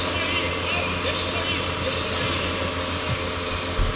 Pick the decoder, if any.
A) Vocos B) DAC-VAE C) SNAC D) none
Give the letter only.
D